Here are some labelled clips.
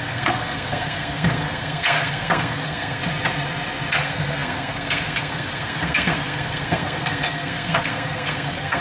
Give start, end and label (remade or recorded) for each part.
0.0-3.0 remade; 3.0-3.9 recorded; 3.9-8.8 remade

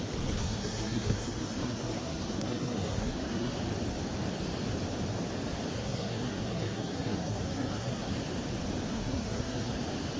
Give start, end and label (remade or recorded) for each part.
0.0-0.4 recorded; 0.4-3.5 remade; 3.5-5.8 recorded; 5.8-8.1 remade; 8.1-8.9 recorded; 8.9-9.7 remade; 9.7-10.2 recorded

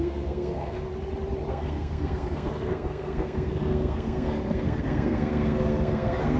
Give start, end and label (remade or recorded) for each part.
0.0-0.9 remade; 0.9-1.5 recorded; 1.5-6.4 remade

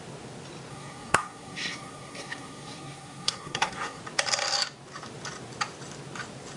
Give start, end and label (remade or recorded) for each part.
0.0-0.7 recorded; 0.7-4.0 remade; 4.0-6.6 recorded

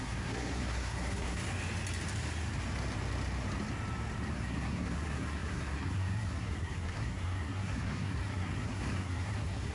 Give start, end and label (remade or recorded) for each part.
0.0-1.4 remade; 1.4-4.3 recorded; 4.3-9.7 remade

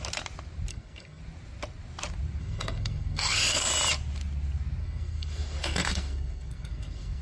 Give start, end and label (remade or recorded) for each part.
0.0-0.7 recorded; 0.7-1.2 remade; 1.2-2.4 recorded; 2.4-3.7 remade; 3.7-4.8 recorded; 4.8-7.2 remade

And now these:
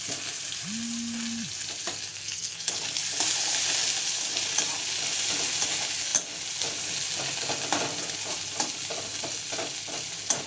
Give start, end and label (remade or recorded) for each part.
0.0-2.1 recorded; 2.1-2.7 remade; 2.7-10.5 recorded